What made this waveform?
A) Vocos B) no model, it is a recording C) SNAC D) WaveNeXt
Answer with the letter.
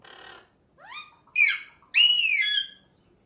B